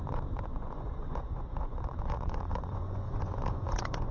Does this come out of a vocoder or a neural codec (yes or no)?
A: yes